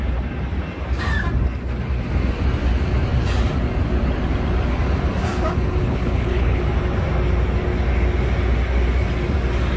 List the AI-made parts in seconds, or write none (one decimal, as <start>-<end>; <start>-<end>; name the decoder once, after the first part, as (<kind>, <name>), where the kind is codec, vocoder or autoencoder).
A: 5.8-6.6 (codec, HILCodec)